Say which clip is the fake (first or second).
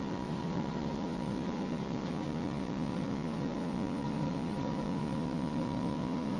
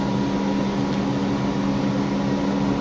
first